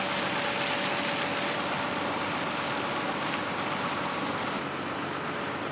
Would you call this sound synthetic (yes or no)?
no